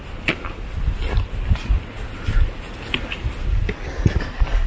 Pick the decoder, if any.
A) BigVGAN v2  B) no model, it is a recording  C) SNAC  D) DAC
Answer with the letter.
B